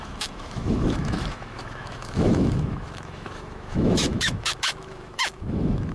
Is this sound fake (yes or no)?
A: yes